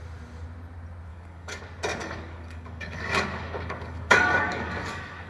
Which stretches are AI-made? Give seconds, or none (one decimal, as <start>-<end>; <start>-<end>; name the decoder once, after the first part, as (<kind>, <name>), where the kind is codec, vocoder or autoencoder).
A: 1.1-1.6 (codec, DAC); 2.0-5.3